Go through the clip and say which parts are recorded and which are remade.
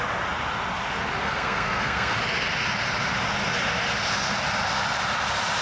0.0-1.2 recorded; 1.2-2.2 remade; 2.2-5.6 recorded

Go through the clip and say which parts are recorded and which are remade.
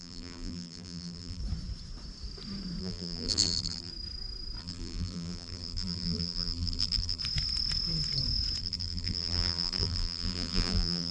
0.0-1.4 remade; 1.4-2.8 recorded; 2.8-3.9 remade; 3.9-4.6 recorded; 4.6-7.2 remade; 7.2-8.6 recorded; 8.6-11.1 remade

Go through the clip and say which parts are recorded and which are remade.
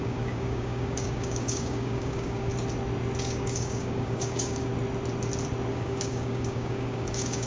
0.0-2.5 remade; 2.5-3.2 recorded; 3.2-4.7 remade; 4.7-5.7 recorded; 5.7-7.5 remade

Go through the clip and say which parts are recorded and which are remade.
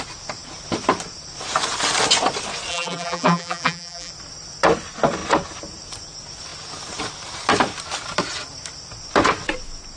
0.0-2.7 recorded; 2.7-4.1 remade; 4.1-10.0 recorded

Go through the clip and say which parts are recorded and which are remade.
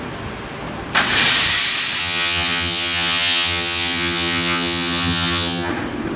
0.0-2.0 recorded; 2.0-5.7 remade; 5.7-6.2 recorded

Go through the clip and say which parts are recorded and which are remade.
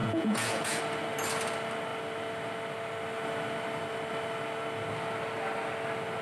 0.0-0.8 remade; 0.8-6.2 recorded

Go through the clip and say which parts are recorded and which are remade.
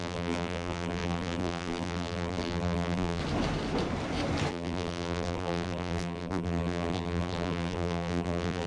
0.0-3.2 remade; 3.2-4.5 recorded; 4.5-8.7 remade